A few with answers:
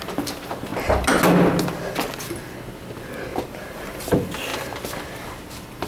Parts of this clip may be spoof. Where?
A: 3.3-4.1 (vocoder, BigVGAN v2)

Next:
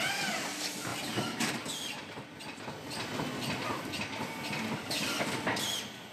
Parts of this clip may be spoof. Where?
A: 0.9-1.5 (vocoder, BigVGAN v2)